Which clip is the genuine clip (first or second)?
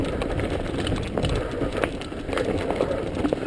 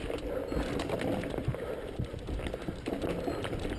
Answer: second